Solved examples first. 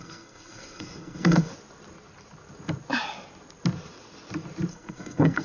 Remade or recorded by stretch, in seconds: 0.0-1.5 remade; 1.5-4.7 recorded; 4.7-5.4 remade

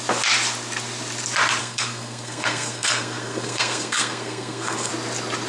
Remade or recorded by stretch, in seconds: 0.0-1.6 recorded; 1.6-4.9 remade; 4.9-5.5 recorded

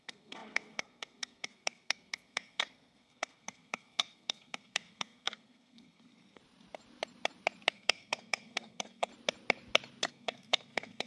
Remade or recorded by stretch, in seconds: 0.0-6.4 remade; 6.4-7.7 recorded; 7.7-9.1 remade; 9.1-10.1 recorded; 10.1-11.1 remade

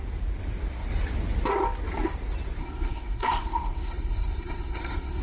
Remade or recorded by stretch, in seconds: 0.0-2.6 recorded; 2.6-5.2 remade

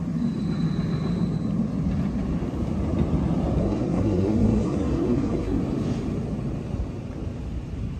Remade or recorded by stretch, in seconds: 0.0-3.6 recorded; 3.6-5.6 remade; 5.6-8.0 recorded